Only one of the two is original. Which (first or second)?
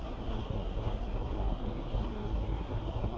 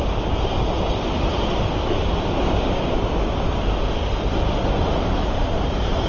second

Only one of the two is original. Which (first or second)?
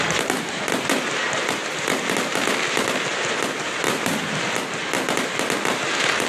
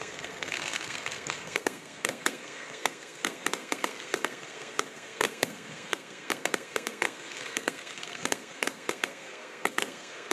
first